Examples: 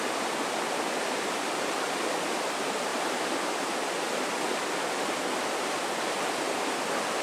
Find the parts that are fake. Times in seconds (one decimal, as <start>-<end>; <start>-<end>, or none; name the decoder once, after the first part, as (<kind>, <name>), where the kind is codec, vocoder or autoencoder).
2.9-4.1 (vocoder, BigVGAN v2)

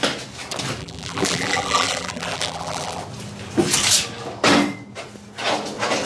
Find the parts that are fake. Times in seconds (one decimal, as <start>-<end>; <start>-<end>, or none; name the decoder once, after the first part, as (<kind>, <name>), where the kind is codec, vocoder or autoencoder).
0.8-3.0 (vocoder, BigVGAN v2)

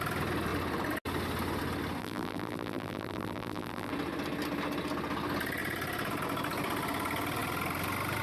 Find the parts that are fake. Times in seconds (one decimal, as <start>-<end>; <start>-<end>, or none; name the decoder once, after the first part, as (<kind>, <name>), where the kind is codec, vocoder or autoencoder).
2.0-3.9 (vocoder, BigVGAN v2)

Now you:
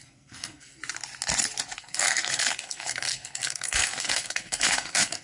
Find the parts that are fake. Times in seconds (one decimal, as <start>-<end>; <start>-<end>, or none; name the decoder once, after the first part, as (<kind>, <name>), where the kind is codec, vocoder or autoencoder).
0.0-0.8 (codec, SNAC); 1.8-5.2

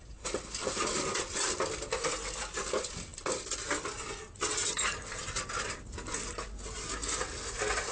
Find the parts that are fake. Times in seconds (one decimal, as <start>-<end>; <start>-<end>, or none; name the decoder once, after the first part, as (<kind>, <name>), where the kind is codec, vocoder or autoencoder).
none